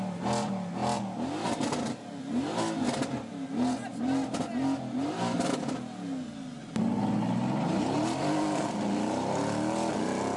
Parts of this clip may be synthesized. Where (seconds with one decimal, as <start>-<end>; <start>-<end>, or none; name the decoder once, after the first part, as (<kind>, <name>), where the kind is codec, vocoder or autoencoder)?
none